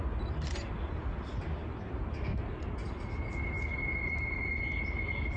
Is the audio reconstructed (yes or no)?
no